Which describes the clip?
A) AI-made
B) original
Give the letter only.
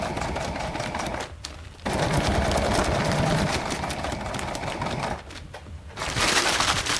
A